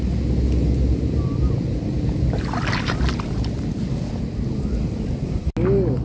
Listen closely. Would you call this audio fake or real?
real